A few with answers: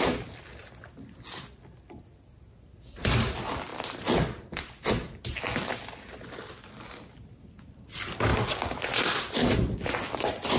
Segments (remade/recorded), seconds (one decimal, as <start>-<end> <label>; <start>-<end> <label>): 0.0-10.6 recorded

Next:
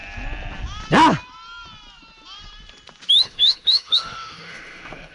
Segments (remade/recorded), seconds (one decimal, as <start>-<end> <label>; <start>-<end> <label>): 0.0-3.1 recorded; 3.1-5.1 remade

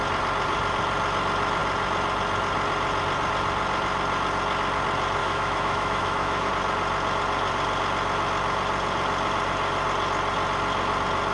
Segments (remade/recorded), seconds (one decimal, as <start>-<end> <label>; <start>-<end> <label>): 0.0-5.2 recorded; 5.2-6.5 remade; 6.5-11.3 recorded

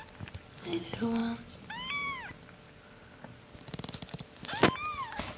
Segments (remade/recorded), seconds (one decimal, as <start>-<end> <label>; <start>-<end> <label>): 0.0-5.4 recorded

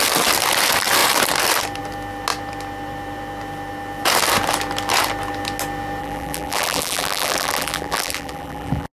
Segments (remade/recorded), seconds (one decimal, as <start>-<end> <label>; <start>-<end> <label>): 0.0-6.0 recorded; 6.0-8.9 remade

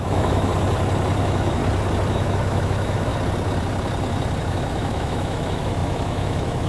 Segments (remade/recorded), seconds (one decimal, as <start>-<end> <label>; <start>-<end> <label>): 0.0-0.5 remade; 0.5-1.2 recorded; 1.2-1.6 remade; 1.6-2.1 recorded; 2.1-3.1 remade; 3.1-4.4 recorded; 4.4-6.7 remade

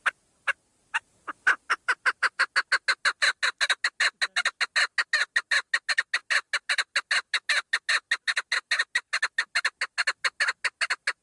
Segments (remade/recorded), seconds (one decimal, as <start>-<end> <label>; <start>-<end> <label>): 0.0-11.2 recorded

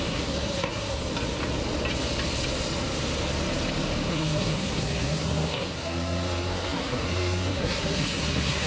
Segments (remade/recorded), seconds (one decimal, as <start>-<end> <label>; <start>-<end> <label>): 0.0-1.0 remade; 1.0-4.1 recorded; 4.1-8.7 remade